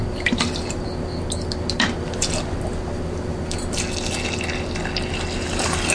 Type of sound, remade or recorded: recorded